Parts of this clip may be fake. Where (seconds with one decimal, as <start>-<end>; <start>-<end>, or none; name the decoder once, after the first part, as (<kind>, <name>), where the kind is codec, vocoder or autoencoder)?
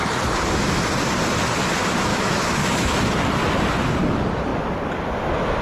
2.1-3.0 (autoencoder, DAC-VAE)